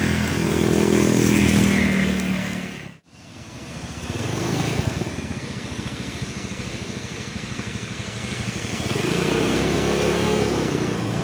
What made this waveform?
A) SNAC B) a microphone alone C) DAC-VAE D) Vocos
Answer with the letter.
A